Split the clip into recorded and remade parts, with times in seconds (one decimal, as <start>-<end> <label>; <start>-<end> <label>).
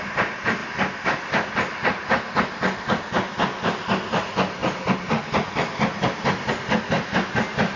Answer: 0.0-7.8 recorded